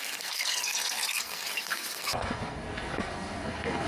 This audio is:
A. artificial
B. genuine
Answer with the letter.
A